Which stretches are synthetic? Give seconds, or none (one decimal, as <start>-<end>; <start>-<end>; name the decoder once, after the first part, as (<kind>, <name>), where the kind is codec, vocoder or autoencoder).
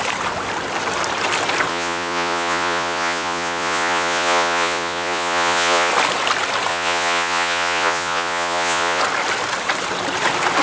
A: 1.7-5.9 (vocoder, Vocos); 6.7-9.0